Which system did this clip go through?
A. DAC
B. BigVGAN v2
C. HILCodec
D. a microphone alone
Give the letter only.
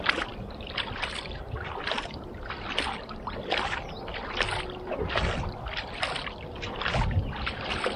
B